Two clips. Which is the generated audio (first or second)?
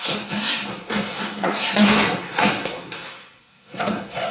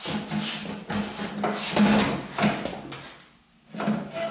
first